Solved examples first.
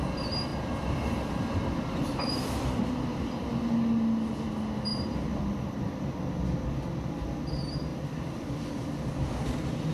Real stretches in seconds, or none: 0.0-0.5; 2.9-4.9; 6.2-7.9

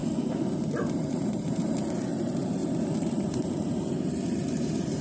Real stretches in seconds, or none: 0.0-1.0